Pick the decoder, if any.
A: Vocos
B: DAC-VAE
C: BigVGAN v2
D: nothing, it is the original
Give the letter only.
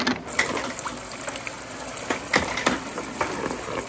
D